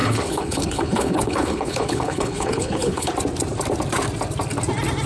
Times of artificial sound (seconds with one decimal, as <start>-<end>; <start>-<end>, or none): 0.0-3.1